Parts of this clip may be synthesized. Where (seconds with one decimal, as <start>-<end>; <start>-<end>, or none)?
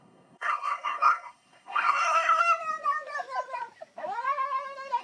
0.0-2.4